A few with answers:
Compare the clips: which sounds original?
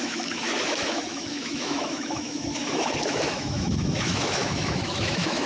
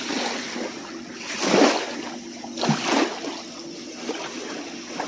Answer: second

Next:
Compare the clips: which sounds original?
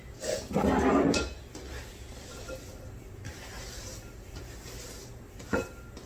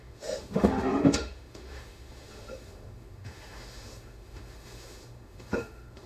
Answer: first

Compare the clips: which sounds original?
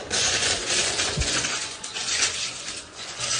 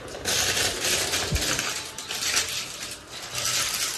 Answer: second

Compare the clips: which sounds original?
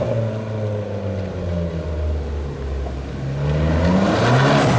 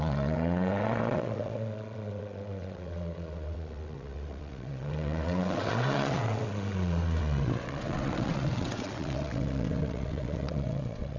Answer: first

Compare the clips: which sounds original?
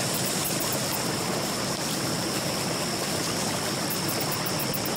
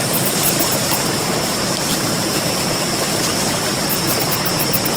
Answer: first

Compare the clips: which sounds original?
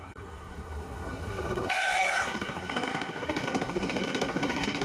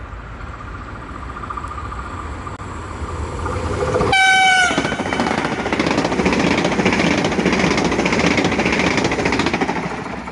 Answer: second